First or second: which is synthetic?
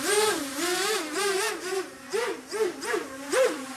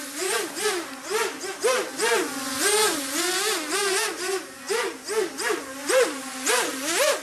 first